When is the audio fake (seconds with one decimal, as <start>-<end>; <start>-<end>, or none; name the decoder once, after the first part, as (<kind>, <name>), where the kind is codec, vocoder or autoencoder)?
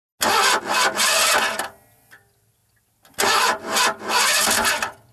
none